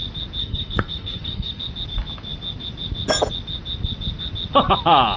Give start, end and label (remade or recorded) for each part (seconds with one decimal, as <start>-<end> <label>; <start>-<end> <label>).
0.0-0.4 recorded; 0.4-1.6 remade; 1.6-5.2 recorded